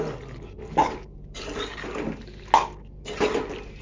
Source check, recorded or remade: recorded